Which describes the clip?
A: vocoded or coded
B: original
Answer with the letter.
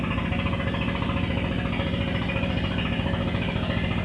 B